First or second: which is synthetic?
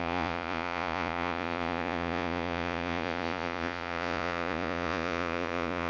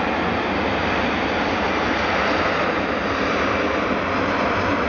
first